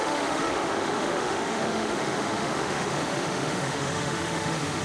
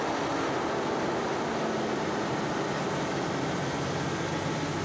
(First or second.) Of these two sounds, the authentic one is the second